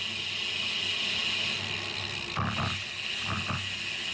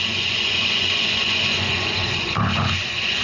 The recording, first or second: first